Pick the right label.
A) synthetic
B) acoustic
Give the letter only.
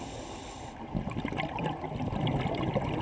B